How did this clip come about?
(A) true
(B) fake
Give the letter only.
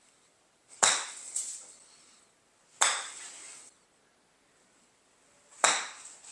A